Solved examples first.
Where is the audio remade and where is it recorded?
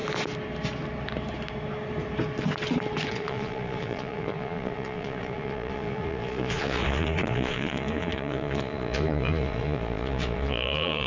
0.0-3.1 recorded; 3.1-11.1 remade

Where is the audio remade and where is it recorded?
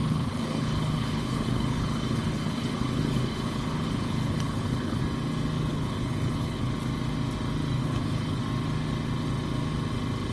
0.0-5.0 remade; 5.0-5.7 recorded; 5.7-6.7 remade; 6.7-7.8 recorded; 7.8-8.4 remade; 8.4-10.3 recorded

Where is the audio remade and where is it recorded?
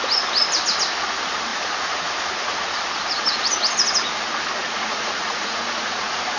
0.0-1.5 recorded; 1.5-2.8 remade; 2.8-4.6 recorded; 4.6-6.4 remade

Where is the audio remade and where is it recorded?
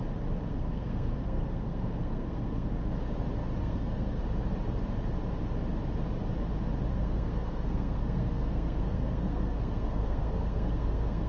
0.0-0.5 recorded; 0.5-2.7 remade; 2.7-3.6 recorded; 3.6-4.2 remade; 4.2-6.9 recorded; 6.9-11.3 remade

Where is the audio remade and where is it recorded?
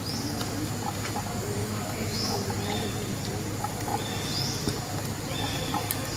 0.0-1.6 recorded; 1.6-2.4 remade; 2.4-6.2 recorded